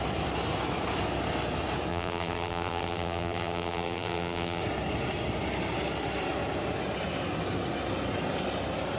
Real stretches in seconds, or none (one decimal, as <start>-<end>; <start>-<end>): 0.0-1.9; 4.6-9.0